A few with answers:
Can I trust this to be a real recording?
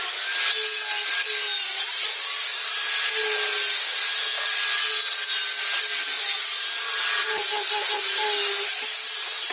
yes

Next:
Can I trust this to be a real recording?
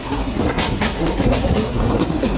no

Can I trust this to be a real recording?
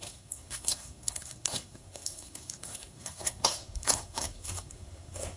no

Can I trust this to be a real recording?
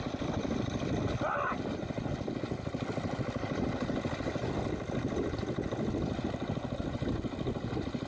yes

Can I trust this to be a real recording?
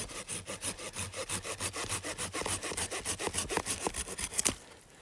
yes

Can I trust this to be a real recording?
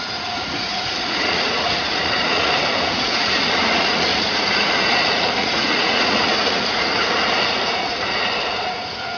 no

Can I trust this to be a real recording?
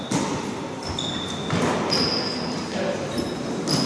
yes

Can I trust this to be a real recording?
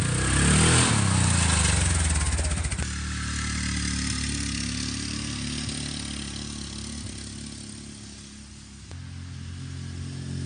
yes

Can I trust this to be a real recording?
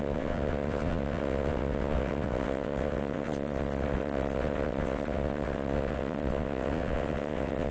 no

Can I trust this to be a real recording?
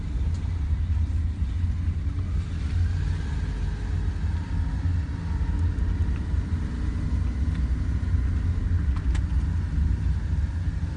yes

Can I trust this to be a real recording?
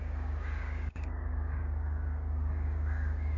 no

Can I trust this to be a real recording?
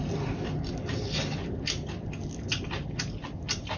yes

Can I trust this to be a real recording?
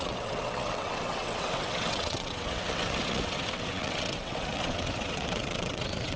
no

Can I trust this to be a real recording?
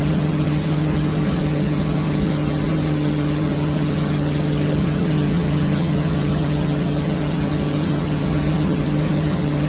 no